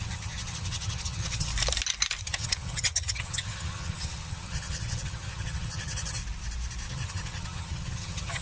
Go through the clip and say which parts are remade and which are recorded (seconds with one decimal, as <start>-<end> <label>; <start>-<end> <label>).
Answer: 0.0-1.5 remade; 1.5-2.2 recorded; 2.2-6.2 remade; 6.2-6.9 recorded; 6.9-8.4 remade